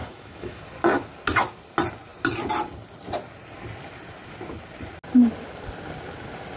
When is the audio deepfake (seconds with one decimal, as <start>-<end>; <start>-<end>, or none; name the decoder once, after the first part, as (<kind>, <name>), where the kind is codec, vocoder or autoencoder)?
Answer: 0.0-0.6 (autoencoder, DAC-VAE)